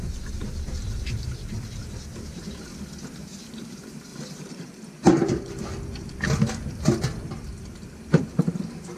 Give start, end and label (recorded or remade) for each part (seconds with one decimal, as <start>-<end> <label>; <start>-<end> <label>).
0.0-2.7 remade; 2.7-3.2 recorded; 3.2-5.9 remade; 5.9-7.7 recorded; 7.7-9.0 remade

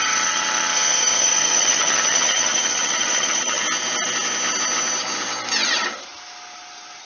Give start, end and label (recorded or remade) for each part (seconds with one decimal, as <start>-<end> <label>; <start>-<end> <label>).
0.0-3.6 remade; 3.6-7.0 recorded